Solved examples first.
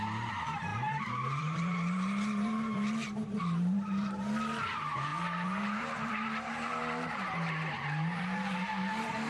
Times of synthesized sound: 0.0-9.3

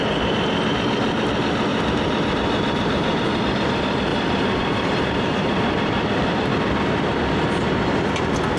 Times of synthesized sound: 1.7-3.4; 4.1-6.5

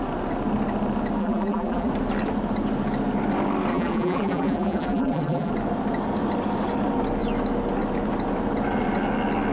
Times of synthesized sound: 1.2-1.9; 3.7-5.5

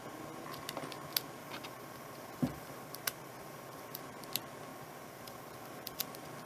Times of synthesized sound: 1.4-4.0; 4.7-6.0